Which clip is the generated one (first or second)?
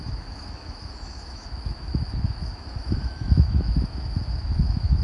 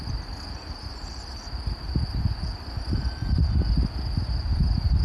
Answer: first